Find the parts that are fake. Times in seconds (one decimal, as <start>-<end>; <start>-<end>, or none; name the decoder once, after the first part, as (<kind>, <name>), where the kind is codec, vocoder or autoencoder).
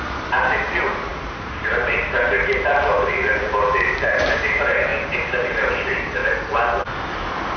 0.0-6.2 (vocoder, BigVGAN v2)